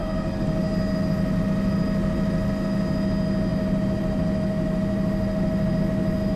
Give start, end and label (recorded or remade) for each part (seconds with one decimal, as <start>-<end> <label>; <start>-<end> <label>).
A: 0.0-6.4 recorded